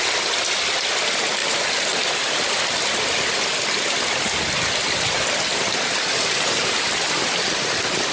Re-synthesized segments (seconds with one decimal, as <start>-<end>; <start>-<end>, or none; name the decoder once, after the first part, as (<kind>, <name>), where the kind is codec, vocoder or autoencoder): 1.4-2.6 (vocoder, BigVGAN v2); 5.5-7.4